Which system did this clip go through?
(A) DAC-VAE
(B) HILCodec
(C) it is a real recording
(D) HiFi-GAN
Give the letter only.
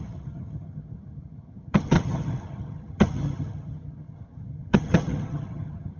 D